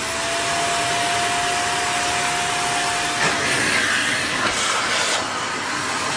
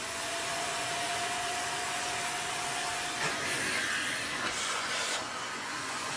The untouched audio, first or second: first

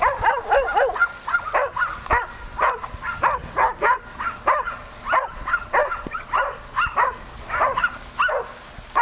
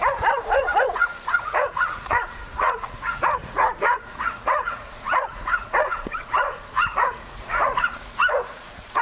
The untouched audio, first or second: first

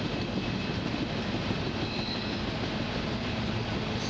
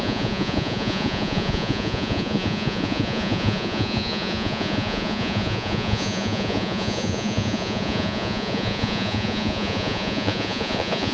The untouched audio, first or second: first